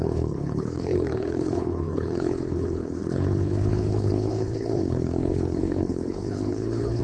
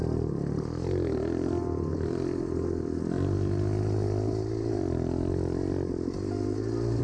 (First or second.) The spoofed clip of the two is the first